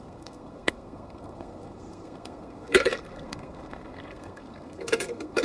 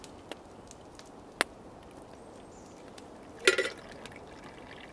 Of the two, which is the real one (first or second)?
second